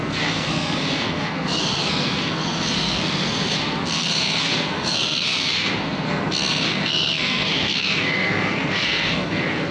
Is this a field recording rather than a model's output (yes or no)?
no